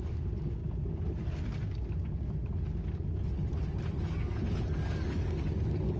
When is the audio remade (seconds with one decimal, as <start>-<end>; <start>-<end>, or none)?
0.0-0.6; 4.0-6.0